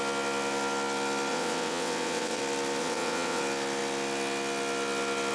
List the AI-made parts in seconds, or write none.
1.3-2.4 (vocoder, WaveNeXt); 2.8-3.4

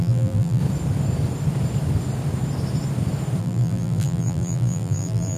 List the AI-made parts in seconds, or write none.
0.0-0.6 (vocoder, BigVGAN v2); 3.4-5.4

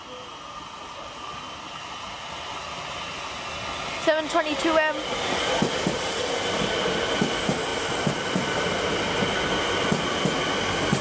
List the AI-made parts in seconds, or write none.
7.7-8.7 (vocoder, BigVGAN v2)